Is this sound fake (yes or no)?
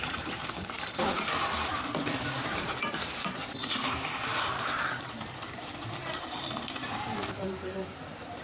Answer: yes